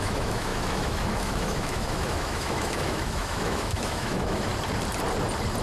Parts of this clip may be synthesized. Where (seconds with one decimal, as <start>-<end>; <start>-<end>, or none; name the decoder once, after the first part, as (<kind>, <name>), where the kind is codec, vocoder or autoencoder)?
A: 0.0-4.5 (autoencoder, DAC-VAE)